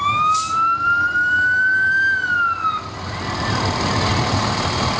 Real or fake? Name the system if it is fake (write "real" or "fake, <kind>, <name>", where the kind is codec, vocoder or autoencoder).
real